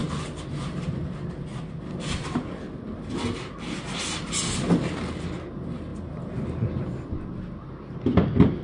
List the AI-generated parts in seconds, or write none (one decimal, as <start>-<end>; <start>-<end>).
none